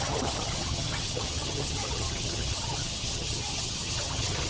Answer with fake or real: fake